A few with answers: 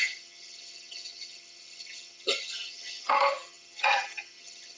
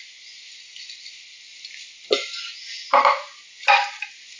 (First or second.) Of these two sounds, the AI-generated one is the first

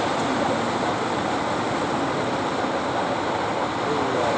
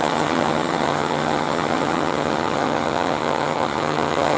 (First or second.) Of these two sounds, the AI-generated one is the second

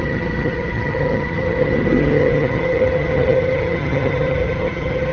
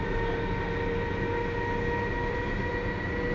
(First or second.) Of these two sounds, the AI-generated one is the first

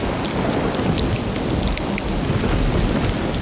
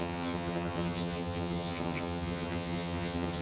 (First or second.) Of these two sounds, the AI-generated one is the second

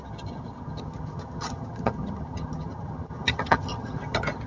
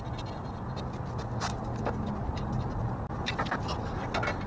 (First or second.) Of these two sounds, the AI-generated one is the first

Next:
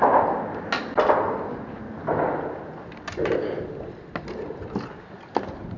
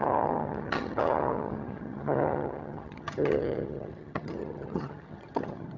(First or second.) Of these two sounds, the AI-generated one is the second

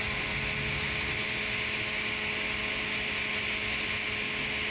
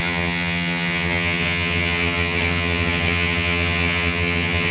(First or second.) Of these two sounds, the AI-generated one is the second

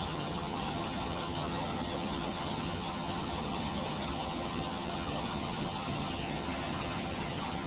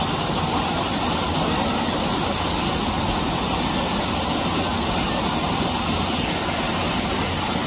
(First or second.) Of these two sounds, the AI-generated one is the first